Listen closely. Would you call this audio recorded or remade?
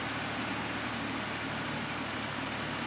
recorded